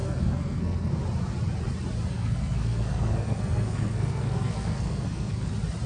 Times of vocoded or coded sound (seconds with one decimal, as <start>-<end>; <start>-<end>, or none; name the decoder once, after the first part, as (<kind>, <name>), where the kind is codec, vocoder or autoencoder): 0.0-1.0 (codec, SNAC); 2.1-5.5

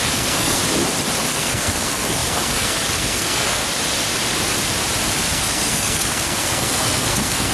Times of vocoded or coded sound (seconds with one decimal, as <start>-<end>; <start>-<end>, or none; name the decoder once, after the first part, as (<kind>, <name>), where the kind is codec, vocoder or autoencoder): 0.0-0.6 (codec, SNAC); 1.3-3.6; 5.2-7.5

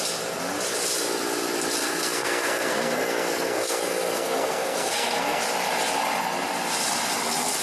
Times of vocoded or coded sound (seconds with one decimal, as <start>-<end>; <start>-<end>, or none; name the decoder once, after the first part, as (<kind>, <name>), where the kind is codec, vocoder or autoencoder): 1.8-5.4 (codec, SNAC)

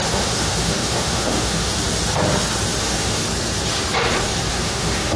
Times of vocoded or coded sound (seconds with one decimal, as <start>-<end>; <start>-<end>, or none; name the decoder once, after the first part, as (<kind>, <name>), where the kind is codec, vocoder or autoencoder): 0.0-1.7 (autoencoder, DAC-VAE); 2.8-3.2; 4.5-5.2

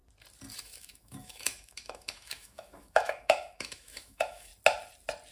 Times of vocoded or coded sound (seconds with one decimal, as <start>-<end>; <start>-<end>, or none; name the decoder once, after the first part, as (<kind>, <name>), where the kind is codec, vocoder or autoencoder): 0.6-4.5 (autoencoder, DAC-VAE)